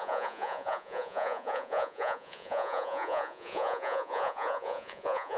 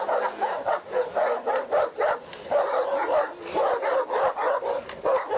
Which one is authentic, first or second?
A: second